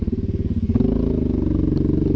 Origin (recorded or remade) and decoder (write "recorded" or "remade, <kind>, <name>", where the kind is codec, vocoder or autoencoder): recorded